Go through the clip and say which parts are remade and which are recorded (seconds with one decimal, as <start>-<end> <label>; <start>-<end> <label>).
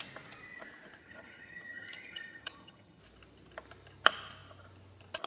0.0-1.0 recorded; 1.0-3.0 remade; 3.0-5.3 recorded